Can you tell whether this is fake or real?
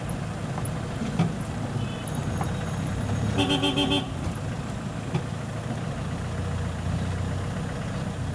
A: real